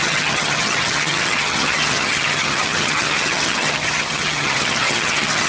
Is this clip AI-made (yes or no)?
yes